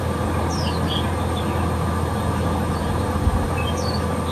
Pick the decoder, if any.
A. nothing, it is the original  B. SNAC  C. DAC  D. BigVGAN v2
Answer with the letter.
A